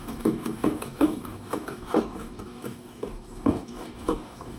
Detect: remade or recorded remade